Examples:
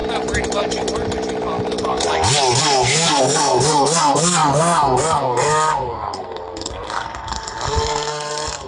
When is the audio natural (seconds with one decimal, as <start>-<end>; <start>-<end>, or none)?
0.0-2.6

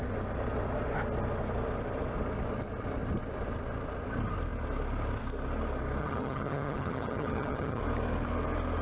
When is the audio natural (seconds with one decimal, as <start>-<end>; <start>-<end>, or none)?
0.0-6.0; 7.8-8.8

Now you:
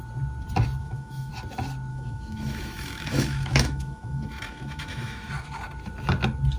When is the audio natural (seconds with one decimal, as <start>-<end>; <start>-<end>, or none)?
0.0-0.8; 1.3-1.9; 5.3-6.6